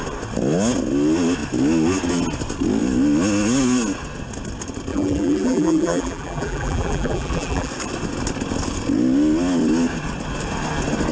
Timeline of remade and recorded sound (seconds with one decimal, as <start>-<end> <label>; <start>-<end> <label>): 0.0-4.9 recorded; 4.9-7.7 remade; 7.7-11.1 recorded